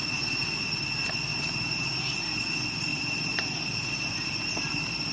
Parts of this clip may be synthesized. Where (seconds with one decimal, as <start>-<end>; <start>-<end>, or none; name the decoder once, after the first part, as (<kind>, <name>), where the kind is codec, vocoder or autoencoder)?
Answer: 1.3-2.4 (vocoder, BigVGAN v2); 2.9-5.1